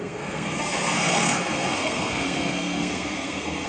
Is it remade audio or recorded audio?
remade